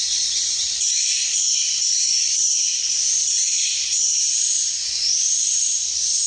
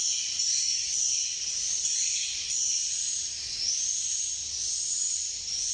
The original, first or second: second